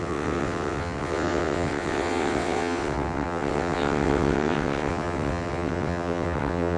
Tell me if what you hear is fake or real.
fake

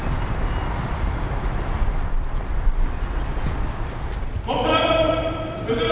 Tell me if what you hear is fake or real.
fake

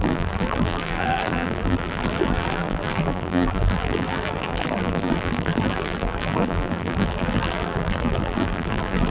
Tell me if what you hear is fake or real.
fake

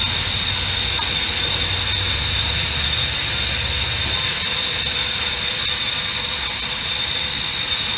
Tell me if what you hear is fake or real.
real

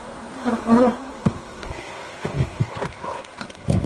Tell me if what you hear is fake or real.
fake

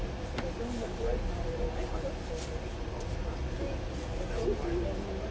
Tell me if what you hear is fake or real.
real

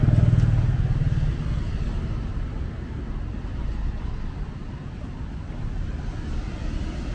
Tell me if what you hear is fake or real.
real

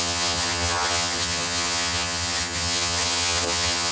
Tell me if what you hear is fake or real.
fake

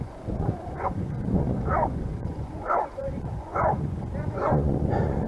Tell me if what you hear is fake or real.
fake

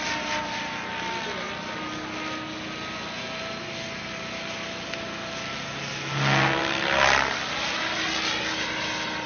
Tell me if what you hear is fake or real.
real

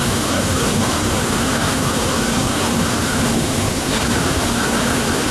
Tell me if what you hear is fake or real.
fake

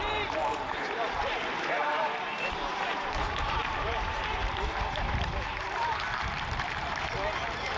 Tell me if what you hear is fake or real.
fake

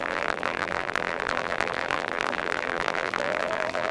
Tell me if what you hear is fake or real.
fake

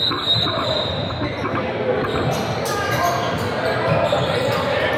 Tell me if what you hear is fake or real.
real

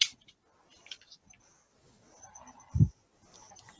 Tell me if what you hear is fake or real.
real